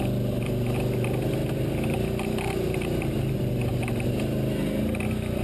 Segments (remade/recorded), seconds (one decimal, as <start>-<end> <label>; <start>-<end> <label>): 0.0-5.4 recorded